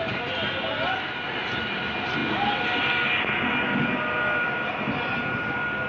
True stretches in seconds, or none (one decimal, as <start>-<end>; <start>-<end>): 0.0-5.9